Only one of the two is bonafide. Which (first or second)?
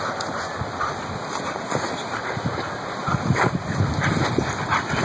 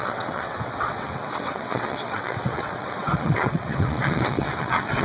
first